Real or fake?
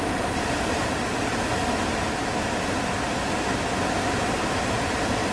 real